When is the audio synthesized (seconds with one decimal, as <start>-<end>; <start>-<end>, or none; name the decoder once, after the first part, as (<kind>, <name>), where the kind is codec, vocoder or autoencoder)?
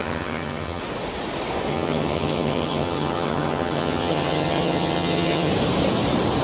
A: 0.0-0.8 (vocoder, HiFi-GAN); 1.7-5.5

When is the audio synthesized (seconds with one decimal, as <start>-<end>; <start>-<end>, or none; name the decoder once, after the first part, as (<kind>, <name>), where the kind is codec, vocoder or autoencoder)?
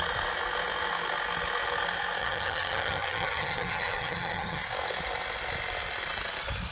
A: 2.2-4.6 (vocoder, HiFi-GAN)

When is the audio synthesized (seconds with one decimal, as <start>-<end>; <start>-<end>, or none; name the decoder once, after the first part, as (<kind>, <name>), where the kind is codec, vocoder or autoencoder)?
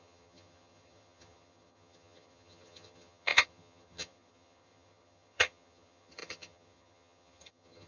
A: 0.0-7.9 (vocoder, HiFi-GAN)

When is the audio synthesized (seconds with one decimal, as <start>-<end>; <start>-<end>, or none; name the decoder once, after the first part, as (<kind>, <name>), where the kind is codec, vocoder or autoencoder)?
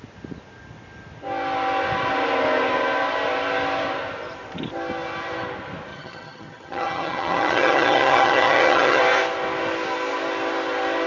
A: 5.9-9.0 (vocoder, HiFi-GAN)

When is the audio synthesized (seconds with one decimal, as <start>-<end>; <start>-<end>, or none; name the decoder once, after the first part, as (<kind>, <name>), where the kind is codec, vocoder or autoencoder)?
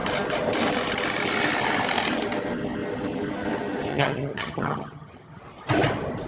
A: 3.9-5.4 (vocoder, HiFi-GAN)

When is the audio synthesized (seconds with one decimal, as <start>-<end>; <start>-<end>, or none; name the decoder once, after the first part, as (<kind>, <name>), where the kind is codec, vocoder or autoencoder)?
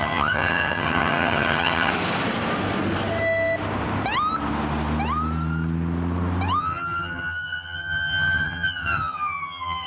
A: 0.0-1.9 (vocoder, HiFi-GAN); 6.6-9.9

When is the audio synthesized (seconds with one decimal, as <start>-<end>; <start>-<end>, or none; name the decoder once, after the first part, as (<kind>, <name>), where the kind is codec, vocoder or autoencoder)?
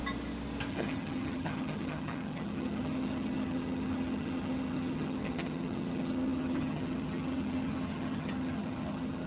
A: 0.7-9.3 (vocoder, HiFi-GAN)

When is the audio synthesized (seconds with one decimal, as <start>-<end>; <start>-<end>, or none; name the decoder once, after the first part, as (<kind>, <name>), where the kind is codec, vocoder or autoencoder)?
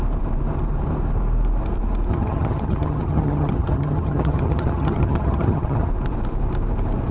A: 2.1-5.9 (vocoder, HiFi-GAN)